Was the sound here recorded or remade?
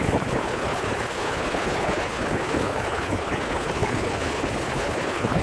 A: remade